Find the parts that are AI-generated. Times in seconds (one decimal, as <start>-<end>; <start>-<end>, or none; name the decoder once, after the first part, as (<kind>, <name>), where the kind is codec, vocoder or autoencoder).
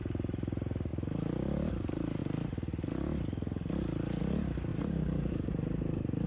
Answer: 0.0-0.9 (vocoder, BigVGAN v2); 1.7-2.2; 4.2-6.3